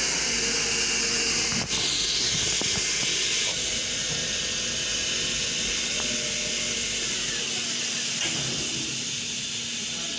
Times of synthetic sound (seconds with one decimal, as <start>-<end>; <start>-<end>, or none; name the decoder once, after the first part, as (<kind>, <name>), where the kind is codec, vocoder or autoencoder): none